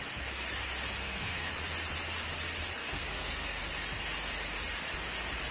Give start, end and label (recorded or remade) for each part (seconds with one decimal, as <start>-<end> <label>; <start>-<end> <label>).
0.0-1.0 recorded; 1.0-1.5 remade; 1.5-2.8 recorded; 2.8-3.6 remade; 3.6-5.5 recorded